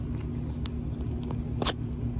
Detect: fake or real real